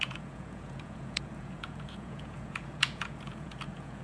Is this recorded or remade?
remade